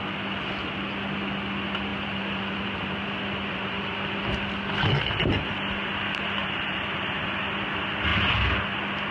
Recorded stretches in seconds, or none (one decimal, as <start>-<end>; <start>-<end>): 0.0-1.9; 4.2-6.4; 7.4-9.1